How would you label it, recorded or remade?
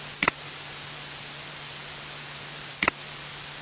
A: recorded